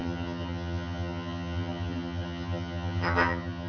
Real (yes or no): no